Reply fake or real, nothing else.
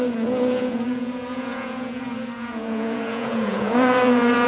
fake